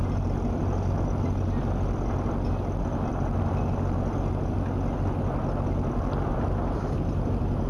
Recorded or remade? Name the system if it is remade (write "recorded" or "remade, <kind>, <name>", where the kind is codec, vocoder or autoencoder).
recorded